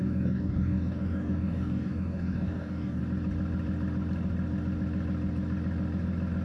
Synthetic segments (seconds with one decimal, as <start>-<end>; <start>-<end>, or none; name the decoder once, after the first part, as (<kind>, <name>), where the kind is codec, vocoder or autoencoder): 0.0-3.0 (codec, DAC)